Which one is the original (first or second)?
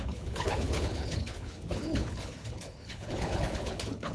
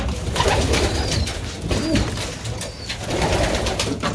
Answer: second